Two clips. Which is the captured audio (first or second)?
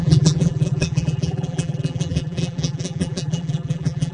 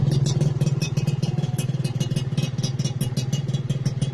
second